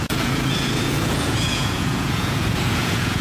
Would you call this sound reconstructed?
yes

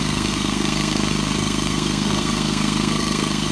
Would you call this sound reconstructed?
yes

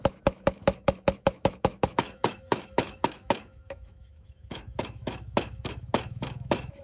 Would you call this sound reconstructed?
yes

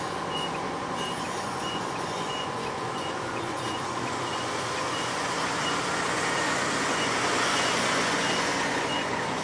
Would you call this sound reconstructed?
yes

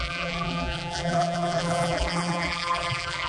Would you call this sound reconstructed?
yes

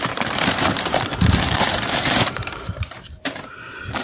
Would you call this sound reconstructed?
yes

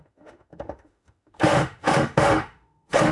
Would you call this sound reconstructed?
yes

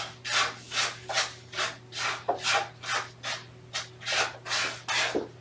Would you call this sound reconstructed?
no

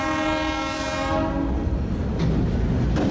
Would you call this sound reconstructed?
no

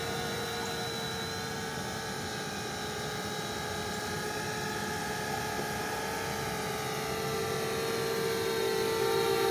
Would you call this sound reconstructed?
no